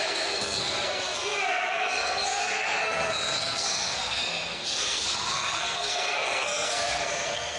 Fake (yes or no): yes